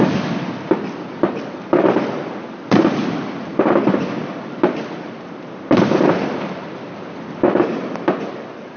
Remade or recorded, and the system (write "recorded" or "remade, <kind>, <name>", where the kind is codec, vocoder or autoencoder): remade, vocoder, BigVGAN v2